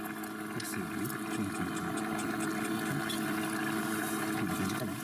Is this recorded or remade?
recorded